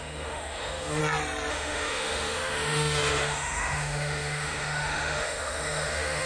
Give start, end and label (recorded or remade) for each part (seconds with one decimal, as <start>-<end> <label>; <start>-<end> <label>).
0.0-1.0 remade; 1.0-1.5 recorded; 1.5-6.3 remade